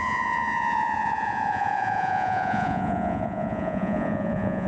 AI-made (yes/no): yes